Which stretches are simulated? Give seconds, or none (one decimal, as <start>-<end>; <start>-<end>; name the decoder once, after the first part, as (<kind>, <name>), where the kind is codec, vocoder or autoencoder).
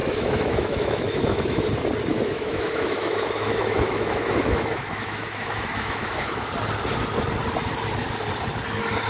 0.0-1.7 (autoencoder, DAC-VAE); 2.1-6.5